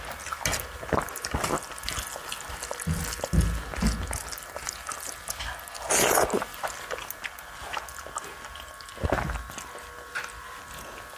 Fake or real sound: real